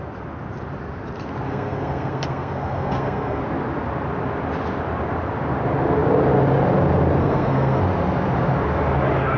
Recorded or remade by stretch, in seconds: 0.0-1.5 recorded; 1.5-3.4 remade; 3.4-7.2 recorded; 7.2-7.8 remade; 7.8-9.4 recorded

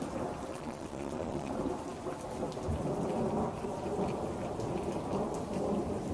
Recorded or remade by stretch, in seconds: 0.0-0.5 recorded; 0.5-1.5 remade; 1.5-6.1 recorded

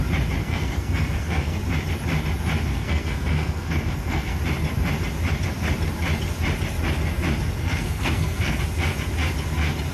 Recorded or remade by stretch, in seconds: 0.0-0.4 recorded; 0.4-1.6 remade; 1.6-2.7 recorded; 2.7-4.4 remade; 4.4-7.6 recorded; 7.6-8.6 remade; 8.6-9.9 recorded

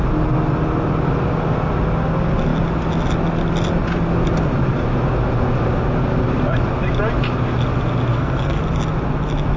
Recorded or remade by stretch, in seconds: 0.0-8.1 recorded; 8.1-8.6 remade; 8.6-9.6 recorded

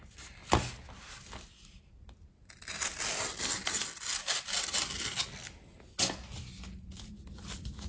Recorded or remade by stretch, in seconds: 0.0-7.9 recorded

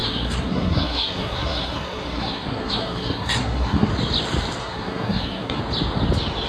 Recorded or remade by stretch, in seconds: 0.0-3.9 remade; 3.9-4.6 recorded; 4.6-5.6 remade; 5.6-6.5 recorded

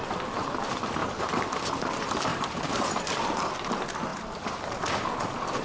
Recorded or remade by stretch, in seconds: 0.0-2.3 recorded; 2.3-3.0 remade; 3.0-4.1 recorded; 4.1-4.7 remade; 4.7-5.6 recorded

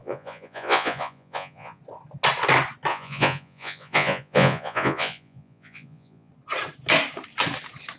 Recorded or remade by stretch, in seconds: 0.0-1.8 remade; 1.8-2.9 recorded; 2.9-6.3 remade; 6.3-8.0 recorded